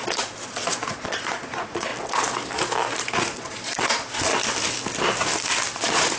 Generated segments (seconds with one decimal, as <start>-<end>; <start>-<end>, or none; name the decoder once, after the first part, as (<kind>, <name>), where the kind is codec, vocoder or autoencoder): 0.0-1.9 (vocoder, Vocos); 3.0-4.3; 5.7-6.2